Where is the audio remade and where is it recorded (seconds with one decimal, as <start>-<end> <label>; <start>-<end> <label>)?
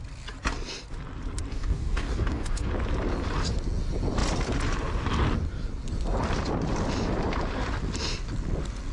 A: 0.0-1.5 recorded; 1.5-2.7 remade; 2.7-8.9 recorded